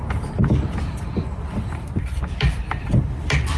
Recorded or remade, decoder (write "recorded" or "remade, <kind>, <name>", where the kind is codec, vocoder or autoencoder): remade, vocoder, BigVGAN v2